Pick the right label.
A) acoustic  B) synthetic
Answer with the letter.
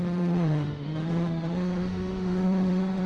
B